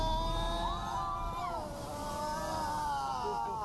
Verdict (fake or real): real